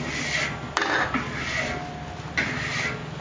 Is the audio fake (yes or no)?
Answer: no